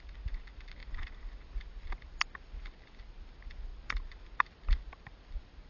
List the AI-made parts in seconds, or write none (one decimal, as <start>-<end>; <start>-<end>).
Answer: none